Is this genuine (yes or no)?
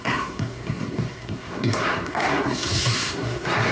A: no